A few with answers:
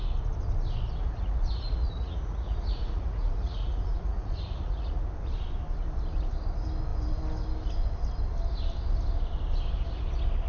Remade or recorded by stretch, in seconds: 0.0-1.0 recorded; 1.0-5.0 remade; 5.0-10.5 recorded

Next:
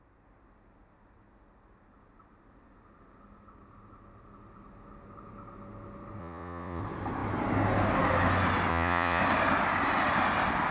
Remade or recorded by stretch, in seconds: 0.0-6.2 recorded; 6.2-6.8 remade; 6.8-8.7 recorded; 8.7-9.2 remade; 9.2-10.7 recorded

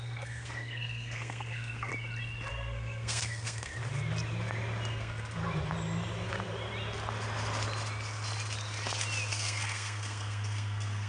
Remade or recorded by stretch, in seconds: 0.0-1.9 remade; 1.9-2.5 recorded; 2.5-3.7 remade; 3.7-4.9 recorded; 4.9-5.4 remade; 5.4-9.3 recorded; 9.3-11.1 remade

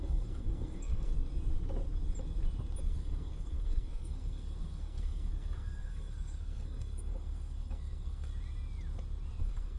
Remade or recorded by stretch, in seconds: 0.0-1.1 remade; 1.1-2.8 recorded; 2.8-8.3 remade; 8.3-9.4 recorded; 9.4-9.8 remade

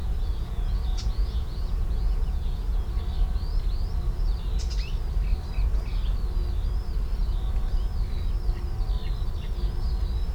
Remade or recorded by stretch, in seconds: 0.0-2.9 remade; 2.9-10.3 recorded

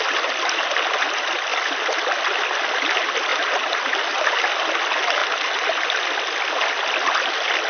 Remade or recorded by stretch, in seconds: 0.0-1.5 recorded; 1.5-2.4 remade; 2.4-3.3 recorded; 3.3-3.9 remade; 3.9-7.7 recorded

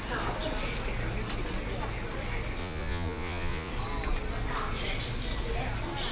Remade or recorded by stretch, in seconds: 0.0-2.6 recorded; 2.6-3.7 remade; 3.7-6.1 recorded